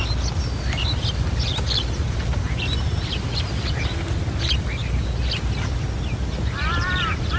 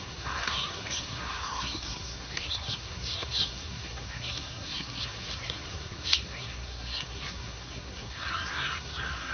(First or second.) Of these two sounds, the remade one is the second